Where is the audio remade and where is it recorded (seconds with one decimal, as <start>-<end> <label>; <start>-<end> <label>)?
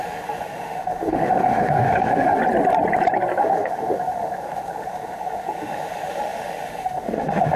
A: 0.0-2.4 remade; 2.4-3.4 recorded; 3.4-7.6 remade